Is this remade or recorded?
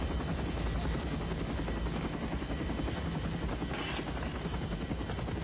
recorded